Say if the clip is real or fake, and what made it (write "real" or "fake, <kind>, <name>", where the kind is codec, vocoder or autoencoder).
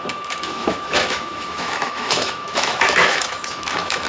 fake, autoencoder, DAC-VAE